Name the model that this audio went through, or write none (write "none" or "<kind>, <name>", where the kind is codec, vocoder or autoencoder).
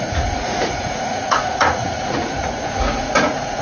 vocoder, Vocos